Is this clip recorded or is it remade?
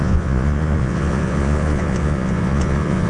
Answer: remade